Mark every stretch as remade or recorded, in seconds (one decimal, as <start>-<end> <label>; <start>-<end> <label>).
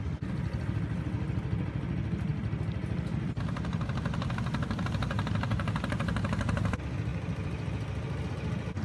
0.0-8.8 recorded